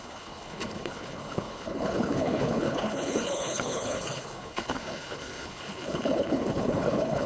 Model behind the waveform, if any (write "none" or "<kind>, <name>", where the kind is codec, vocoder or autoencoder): codec, HILCodec